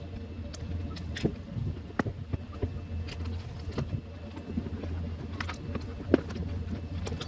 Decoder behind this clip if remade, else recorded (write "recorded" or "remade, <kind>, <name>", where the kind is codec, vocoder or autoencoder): recorded